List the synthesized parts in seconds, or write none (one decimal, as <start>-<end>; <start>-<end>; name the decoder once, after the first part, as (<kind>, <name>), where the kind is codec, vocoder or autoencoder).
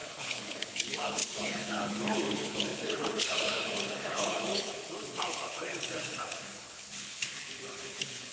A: 0.0-8.3 (codec, HILCodec)